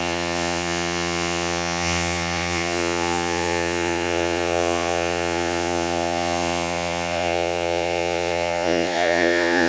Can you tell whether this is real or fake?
fake